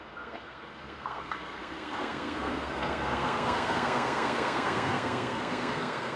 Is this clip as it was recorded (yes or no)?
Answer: no